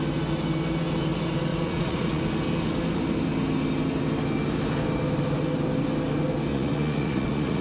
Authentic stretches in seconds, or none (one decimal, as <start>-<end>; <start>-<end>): 0.0-1.5; 2.2-6.5